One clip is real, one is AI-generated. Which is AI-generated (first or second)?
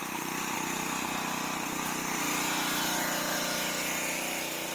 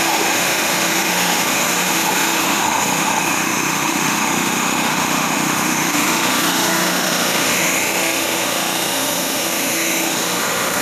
second